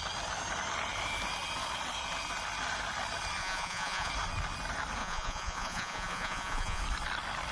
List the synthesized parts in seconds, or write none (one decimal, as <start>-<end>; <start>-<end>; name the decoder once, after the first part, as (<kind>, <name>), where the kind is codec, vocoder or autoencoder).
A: 3.4-4.1 (vocoder, Vocos); 5.0-6.8

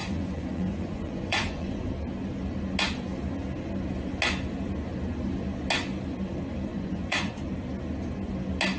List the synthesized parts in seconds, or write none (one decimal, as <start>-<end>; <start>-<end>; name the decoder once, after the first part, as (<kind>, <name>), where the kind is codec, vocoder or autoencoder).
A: 0.0-1.9 (vocoder, Vocos); 6.7-7.4

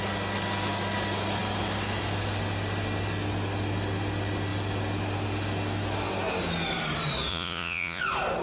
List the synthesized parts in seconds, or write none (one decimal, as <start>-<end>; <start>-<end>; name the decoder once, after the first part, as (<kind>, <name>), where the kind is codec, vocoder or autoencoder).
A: 7.3-8.0 (vocoder, Vocos)

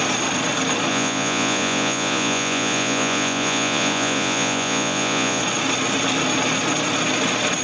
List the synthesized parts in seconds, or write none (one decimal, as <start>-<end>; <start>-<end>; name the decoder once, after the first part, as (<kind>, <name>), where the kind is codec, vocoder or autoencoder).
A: 0.9-5.4 (vocoder, Vocos)

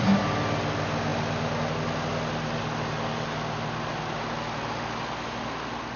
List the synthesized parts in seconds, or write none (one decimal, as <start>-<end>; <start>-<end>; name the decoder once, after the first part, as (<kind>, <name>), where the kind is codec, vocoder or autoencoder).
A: none

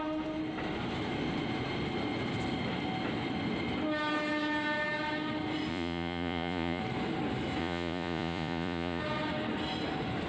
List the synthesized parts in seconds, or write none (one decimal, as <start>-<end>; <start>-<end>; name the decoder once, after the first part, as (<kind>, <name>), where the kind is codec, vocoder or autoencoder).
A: 5.7-6.8 (vocoder, Vocos); 7.6-9.0

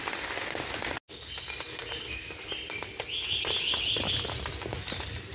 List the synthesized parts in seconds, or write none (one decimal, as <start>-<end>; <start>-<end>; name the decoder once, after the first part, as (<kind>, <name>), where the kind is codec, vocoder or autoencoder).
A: none